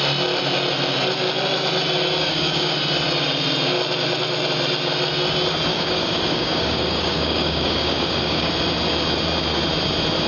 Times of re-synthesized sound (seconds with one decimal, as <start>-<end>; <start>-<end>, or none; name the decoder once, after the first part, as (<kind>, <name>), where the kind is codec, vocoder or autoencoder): 2.2-2.7 (codec, DAC); 5.7-8.5